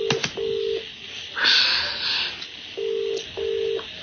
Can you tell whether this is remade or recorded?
recorded